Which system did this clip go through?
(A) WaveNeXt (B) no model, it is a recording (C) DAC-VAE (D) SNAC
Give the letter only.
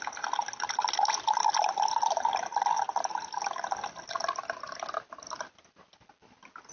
B